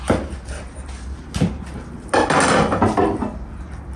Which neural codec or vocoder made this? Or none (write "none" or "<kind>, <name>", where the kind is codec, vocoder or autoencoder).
none